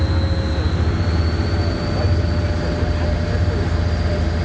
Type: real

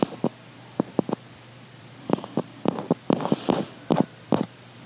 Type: fake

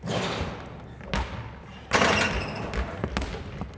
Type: real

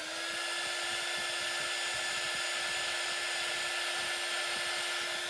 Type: real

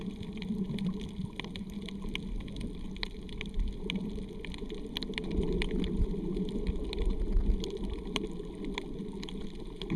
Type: real